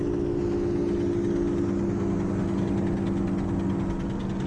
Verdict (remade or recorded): recorded